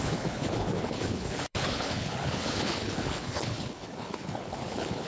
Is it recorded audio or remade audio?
remade